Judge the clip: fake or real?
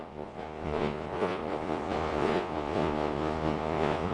fake